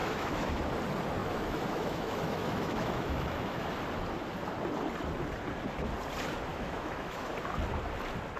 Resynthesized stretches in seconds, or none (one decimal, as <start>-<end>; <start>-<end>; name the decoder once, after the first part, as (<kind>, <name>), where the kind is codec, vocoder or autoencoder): 0.0-0.5 (autoencoder, DAC-VAE); 1.2-3.7; 6.5-7.3